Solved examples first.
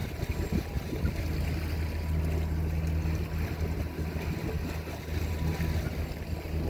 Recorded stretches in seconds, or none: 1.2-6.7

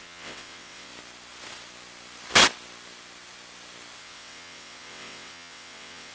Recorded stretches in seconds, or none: 0.9-4.0

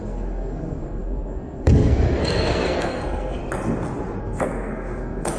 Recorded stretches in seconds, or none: 3.4-4.2

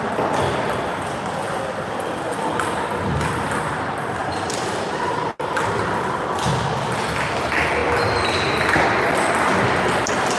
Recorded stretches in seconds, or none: 0.0-4.2; 5.8-10.4

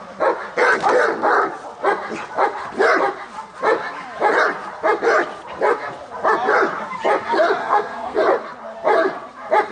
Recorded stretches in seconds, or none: 0.0-7.6; 8.2-9.7

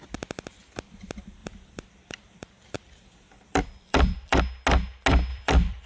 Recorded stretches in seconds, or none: 0.0-1.4; 4.4-5.3

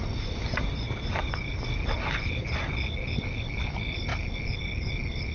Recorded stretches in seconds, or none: 0.0-5.3